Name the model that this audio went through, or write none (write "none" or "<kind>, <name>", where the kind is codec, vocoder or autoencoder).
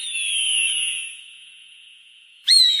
vocoder, Vocos